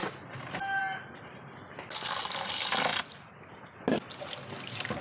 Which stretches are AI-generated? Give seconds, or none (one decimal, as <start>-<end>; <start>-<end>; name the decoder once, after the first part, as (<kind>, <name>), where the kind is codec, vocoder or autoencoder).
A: 2.9-3.8 (vocoder, BigVGAN v2)